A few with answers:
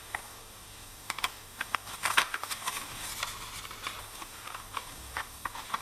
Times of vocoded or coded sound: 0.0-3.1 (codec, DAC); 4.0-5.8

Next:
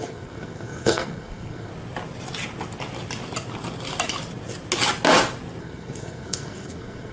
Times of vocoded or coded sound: 0.0-1.7 (codec, SNAC); 5.6-7.1